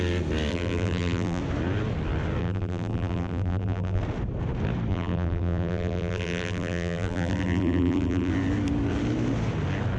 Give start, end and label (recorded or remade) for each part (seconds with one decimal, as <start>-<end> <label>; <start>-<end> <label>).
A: 0.0-0.5 recorded; 0.5-1.4 remade; 1.4-2.4 recorded; 2.4-4.0 remade; 4.0-4.9 recorded; 4.9-8.3 remade; 8.3-10.0 recorded